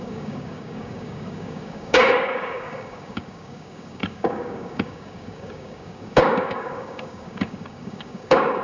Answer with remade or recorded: remade